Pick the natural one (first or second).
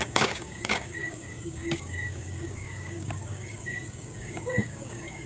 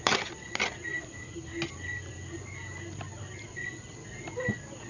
second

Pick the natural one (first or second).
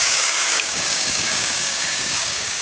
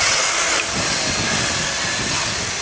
second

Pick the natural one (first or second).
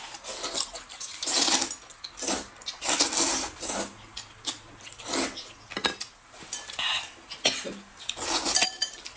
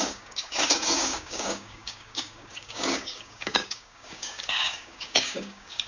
first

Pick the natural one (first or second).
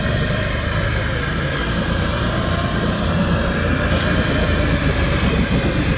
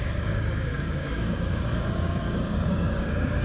first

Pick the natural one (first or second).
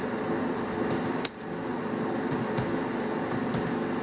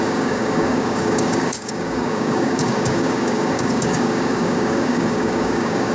first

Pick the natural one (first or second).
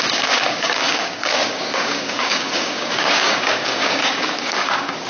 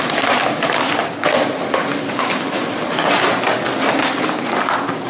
second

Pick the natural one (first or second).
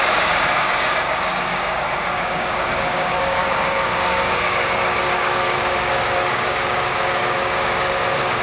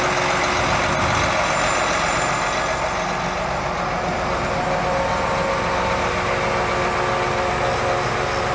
second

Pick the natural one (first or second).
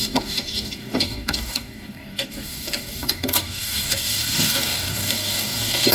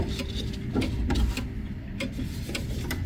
second